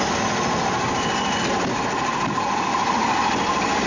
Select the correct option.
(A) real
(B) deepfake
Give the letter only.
A